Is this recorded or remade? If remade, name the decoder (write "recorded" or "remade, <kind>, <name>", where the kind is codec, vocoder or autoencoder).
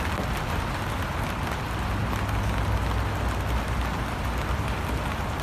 recorded